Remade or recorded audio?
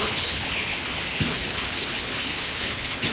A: remade